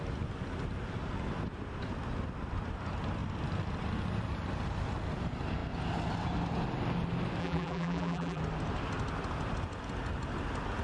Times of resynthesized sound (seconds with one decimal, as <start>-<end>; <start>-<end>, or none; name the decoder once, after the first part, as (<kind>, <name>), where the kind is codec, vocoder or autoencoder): 7.4-8.4 (vocoder, BigVGAN v2)